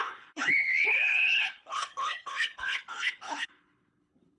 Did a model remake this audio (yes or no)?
yes